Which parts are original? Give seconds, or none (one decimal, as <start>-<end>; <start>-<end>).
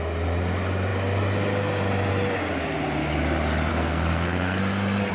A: 0.0-3.7; 4.6-5.1